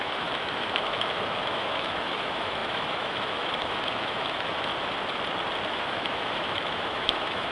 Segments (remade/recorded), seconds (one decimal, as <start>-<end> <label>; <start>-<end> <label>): 0.0-4.7 remade; 4.7-5.7 recorded; 5.7-7.5 remade